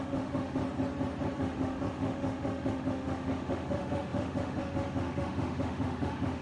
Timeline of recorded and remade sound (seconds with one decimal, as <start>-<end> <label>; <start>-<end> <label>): 0.0-0.6 remade; 0.6-1.4 recorded; 1.4-6.4 remade